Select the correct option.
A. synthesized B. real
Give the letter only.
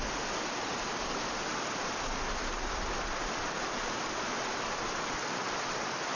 B